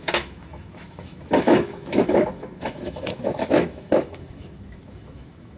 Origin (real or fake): fake